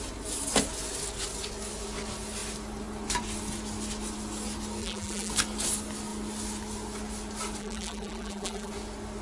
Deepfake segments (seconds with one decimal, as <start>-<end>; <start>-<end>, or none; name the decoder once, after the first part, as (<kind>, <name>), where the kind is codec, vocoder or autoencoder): 4.8-5.3 (vocoder, BigVGAN v2); 7.6-8.7

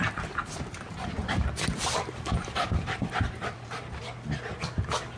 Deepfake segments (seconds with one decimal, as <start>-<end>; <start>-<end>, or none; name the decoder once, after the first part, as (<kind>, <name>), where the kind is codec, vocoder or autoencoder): 0.9-4.0 (vocoder, BigVGAN v2)

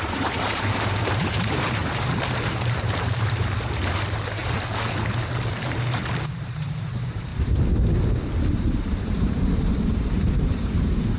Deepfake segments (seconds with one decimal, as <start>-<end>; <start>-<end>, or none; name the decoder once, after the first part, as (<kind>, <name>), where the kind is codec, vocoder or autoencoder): 0.0-4.4 (vocoder, BigVGAN v2); 6.4-7.3; 8.5-11.2

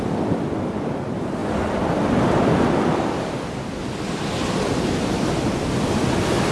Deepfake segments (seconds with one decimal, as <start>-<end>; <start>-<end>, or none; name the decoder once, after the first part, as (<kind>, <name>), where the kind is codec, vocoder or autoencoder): 0.0-6.5 (vocoder, BigVGAN v2)

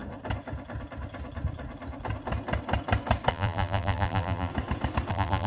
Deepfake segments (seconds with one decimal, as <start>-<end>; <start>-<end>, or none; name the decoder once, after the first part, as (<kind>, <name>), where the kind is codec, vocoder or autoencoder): 3.3-4.5 (vocoder, BigVGAN v2); 5.1-5.5

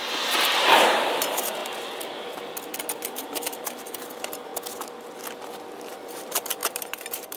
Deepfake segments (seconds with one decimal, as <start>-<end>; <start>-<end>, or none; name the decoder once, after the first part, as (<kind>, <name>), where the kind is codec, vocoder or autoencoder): 0.0-1.6 (vocoder, BigVGAN v2); 3.2-4.5; 6.1-7.4

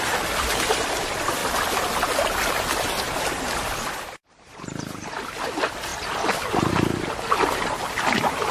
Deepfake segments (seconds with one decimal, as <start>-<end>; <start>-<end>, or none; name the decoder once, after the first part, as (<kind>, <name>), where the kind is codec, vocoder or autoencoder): 0.0-1.4 (vocoder, BigVGAN v2); 3.3-5.9; 7.3-8.5

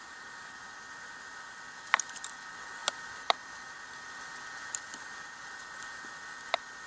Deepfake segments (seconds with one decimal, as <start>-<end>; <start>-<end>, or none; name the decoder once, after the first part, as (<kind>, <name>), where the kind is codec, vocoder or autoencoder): 0.0-0.6 (vocoder, BigVGAN v2); 2.8-6.1